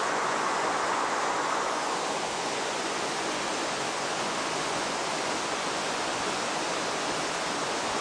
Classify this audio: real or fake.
fake